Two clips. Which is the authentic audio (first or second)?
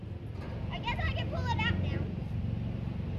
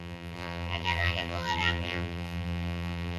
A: first